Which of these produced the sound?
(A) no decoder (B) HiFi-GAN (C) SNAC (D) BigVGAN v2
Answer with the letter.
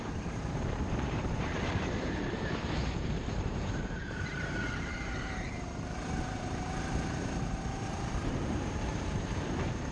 D